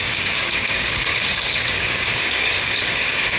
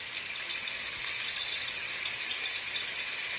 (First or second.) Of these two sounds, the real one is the second